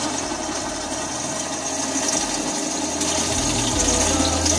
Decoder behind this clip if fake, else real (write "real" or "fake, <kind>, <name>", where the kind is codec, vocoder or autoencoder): real